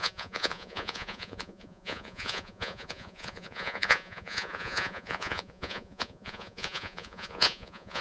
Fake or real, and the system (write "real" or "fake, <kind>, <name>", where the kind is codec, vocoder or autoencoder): fake, vocoder, Vocos